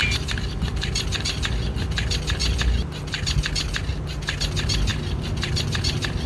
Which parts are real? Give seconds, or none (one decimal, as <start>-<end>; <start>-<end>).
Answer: 0.0-6.3